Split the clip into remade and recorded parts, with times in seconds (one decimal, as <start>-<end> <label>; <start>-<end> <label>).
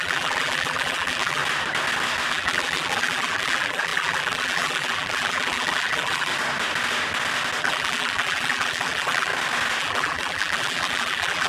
0.0-1.4 remade; 1.4-2.3 recorded; 2.3-6.3 remade; 6.3-7.6 recorded; 7.6-9.3 remade; 9.3-9.8 recorded; 9.8-11.5 remade